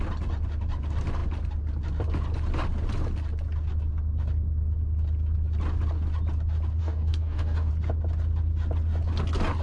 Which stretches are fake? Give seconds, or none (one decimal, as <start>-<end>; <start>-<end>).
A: 6.8-7.7